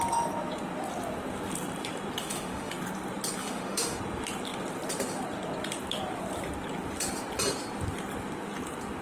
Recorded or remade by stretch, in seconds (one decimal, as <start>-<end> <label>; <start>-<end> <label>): 0.0-2.2 recorded; 2.2-2.7 remade; 2.7-3.4 recorded; 3.4-4.0 remade; 4.0-9.0 recorded